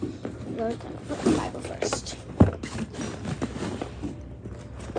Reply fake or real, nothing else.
real